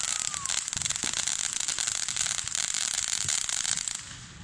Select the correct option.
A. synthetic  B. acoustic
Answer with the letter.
B